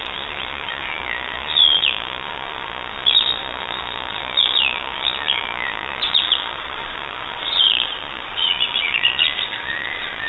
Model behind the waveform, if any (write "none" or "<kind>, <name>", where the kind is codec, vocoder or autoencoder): vocoder, Vocos